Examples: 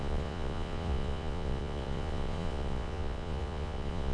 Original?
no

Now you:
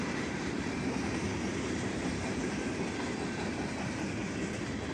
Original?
no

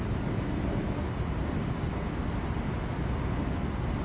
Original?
yes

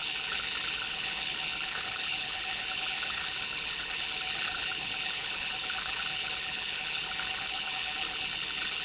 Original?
no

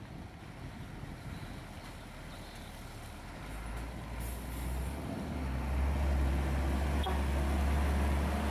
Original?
yes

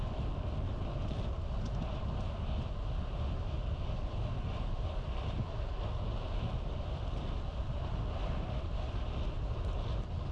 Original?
yes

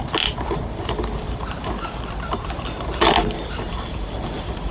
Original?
yes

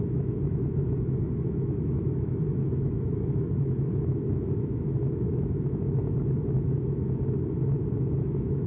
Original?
no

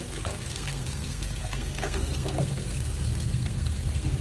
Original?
no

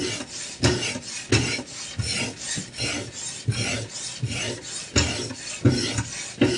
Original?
yes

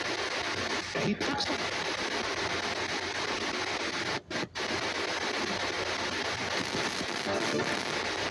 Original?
yes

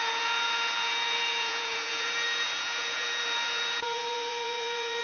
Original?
no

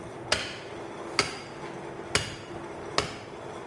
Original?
yes